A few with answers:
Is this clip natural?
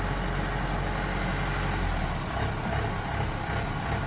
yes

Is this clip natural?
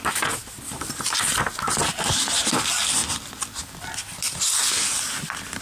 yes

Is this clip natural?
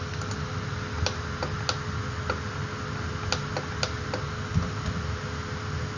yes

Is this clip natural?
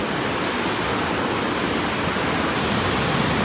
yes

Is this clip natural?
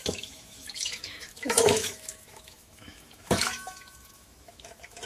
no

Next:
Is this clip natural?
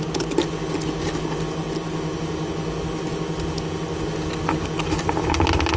yes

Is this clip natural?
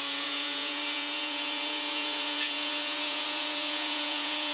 no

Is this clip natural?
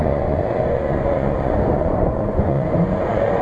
no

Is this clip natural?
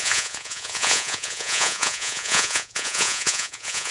no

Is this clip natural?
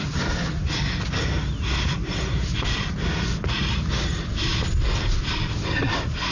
yes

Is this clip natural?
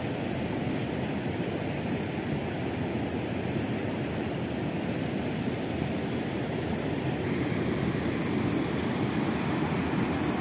yes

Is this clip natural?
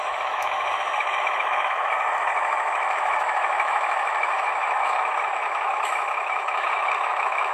no